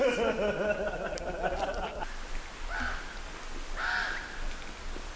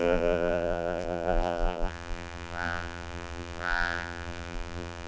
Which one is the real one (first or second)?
first